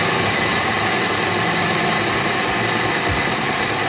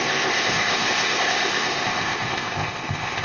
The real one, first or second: first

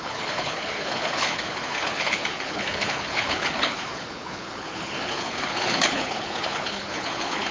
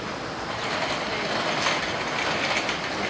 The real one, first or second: second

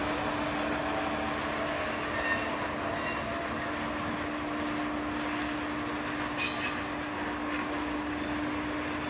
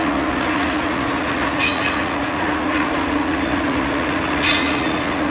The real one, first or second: first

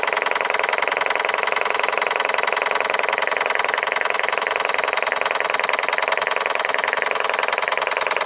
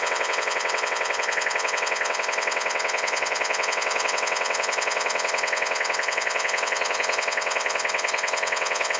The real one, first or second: first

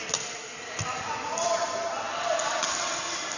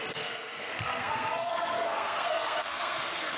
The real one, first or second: first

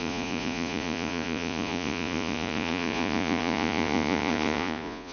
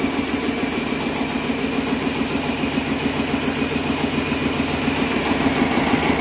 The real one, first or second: second